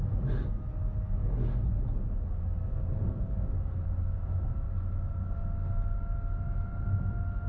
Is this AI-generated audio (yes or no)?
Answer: no